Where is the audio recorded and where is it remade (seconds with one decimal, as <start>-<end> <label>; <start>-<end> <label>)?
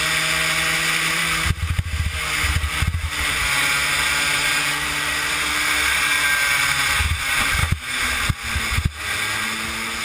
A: 0.0-7.6 recorded; 7.6-8.1 remade; 8.1-10.0 recorded